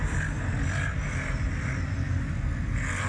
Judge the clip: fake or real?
real